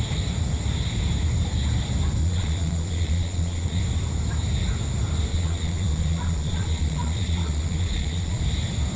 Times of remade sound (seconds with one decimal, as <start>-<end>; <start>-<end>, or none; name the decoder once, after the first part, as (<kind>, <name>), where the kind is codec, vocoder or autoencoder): 2.2-3.8 (vocoder, Vocos); 5.3-8.4